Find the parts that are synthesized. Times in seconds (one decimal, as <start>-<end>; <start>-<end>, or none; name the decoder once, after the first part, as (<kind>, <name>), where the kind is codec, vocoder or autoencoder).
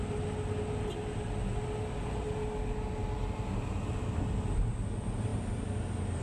none